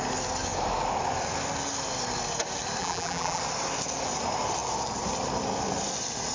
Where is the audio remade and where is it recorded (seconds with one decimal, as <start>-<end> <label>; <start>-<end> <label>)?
0.0-2.8 recorded; 2.8-3.4 remade; 3.4-6.3 recorded